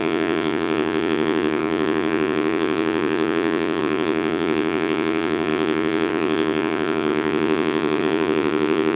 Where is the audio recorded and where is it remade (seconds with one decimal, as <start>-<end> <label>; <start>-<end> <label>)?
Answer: 0.0-9.0 remade